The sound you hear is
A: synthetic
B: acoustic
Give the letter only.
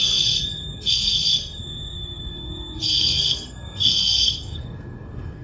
A